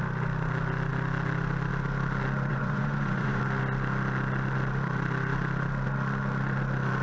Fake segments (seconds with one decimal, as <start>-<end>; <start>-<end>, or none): 2.5-3.4